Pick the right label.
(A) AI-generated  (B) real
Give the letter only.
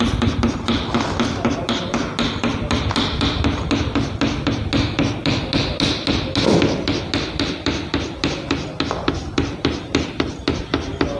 B